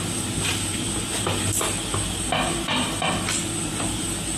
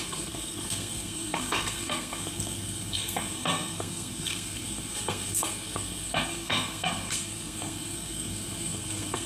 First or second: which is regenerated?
second